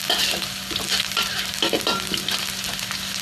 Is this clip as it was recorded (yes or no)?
yes